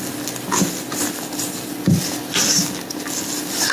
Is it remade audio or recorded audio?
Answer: recorded